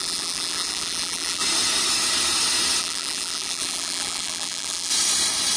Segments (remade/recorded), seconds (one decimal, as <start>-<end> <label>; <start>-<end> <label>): 0.0-1.4 remade; 1.4-2.8 recorded; 2.8-4.9 remade; 4.9-5.6 recorded